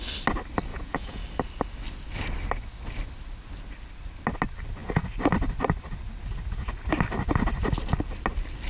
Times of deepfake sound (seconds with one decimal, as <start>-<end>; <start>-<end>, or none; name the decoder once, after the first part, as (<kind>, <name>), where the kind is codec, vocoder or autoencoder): 0.7-1.2 (vocoder, Vocos)